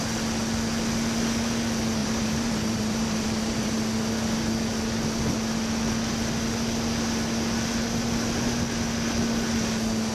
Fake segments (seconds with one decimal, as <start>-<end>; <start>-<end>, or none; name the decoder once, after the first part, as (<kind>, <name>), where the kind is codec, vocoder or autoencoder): 2.0-3.7 (vocoder, BigVGAN v2)